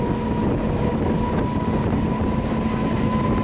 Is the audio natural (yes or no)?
yes